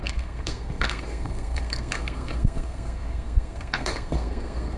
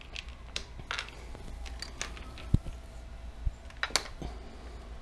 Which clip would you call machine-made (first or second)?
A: first